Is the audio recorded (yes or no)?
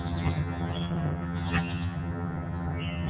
no